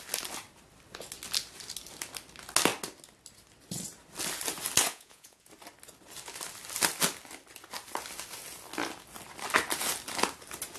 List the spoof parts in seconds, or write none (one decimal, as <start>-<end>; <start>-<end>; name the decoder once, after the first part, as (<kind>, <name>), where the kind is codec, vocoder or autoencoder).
4.9-5.5 (vocoder, Vocos)